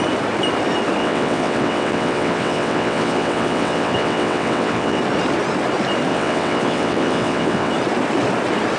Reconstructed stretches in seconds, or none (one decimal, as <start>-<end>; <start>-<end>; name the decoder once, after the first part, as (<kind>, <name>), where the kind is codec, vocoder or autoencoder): 1.0-5.0 (vocoder, WaveNeXt); 6.1-7.7

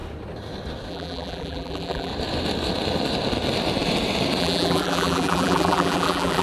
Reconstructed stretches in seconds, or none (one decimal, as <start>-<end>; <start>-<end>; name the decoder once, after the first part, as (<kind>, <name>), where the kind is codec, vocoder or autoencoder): 0.9-2.1 (vocoder, BigVGAN v2); 4.4-6.4